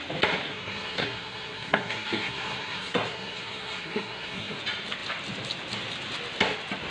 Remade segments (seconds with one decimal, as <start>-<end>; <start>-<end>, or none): 0.5-4.6